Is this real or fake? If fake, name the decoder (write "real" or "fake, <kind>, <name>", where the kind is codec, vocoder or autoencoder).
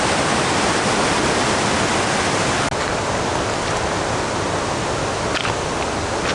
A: real